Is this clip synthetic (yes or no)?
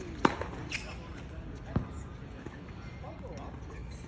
no